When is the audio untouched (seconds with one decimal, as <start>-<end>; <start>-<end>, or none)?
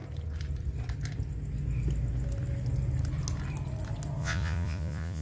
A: 0.0-4.2